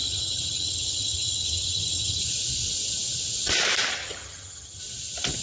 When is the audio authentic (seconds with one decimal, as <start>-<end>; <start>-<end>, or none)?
2.2-3.9; 4.8-5.4